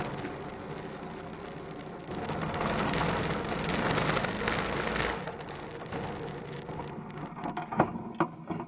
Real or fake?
real